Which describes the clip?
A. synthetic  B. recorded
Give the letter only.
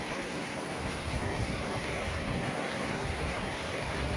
A